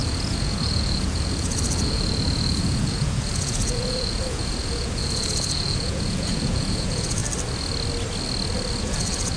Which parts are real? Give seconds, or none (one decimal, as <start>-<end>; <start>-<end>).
7.2-8.8